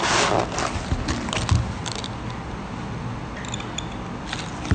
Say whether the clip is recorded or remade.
recorded